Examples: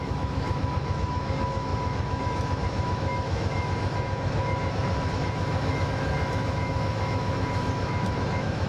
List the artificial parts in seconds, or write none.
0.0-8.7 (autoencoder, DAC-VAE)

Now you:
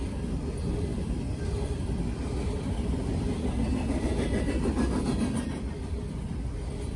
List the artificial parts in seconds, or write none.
none

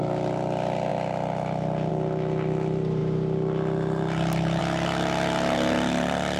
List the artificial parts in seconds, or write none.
none